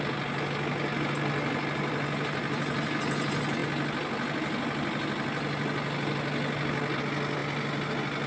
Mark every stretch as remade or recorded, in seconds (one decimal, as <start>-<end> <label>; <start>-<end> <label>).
0.0-8.3 recorded